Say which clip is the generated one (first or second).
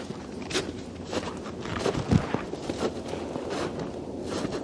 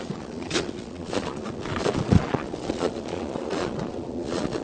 second